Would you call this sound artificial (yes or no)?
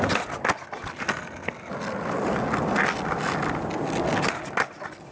no